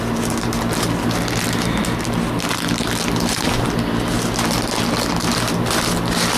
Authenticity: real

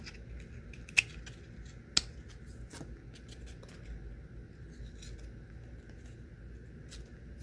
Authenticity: real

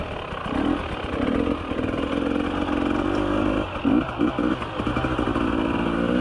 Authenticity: real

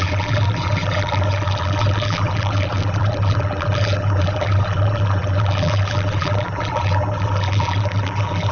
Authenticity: fake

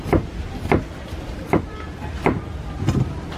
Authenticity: fake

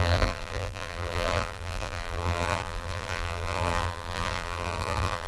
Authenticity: fake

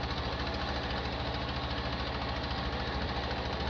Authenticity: real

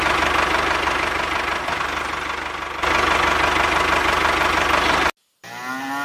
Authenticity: real